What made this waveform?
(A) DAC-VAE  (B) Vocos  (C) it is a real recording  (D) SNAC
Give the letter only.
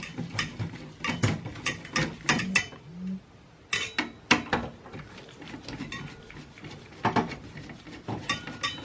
C